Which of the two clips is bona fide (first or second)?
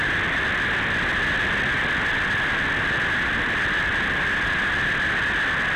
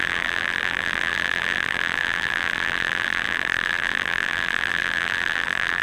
first